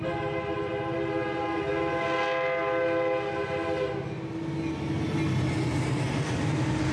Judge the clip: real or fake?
real